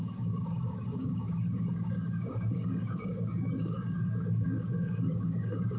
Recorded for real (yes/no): no